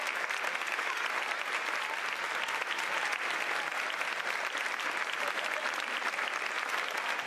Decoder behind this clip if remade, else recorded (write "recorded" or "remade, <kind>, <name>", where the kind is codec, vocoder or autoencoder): recorded